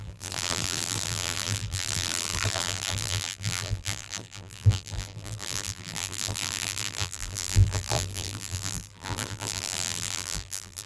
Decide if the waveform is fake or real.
fake